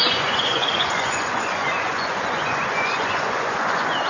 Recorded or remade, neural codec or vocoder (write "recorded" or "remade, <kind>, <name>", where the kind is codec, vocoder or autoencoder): remade, vocoder, Vocos